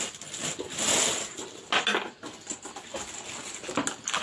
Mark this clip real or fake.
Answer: real